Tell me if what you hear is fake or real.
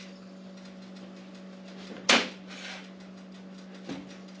real